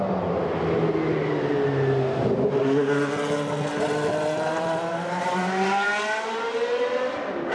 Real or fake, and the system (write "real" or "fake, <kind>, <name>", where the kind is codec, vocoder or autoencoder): real